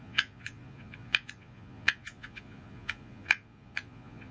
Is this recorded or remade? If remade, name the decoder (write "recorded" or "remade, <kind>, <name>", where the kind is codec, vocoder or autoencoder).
remade, vocoder, Vocos